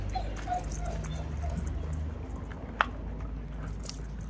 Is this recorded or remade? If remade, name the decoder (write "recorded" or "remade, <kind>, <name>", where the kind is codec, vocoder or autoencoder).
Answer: recorded